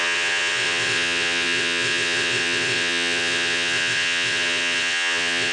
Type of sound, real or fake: fake